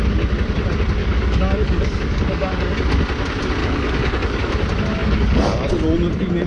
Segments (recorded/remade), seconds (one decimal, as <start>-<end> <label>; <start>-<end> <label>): 0.0-1.0 recorded; 1.0-2.8 remade; 2.8-3.6 recorded; 3.6-4.5 remade; 4.5-5.0 recorded; 5.0-5.7 remade; 5.7-6.5 recorded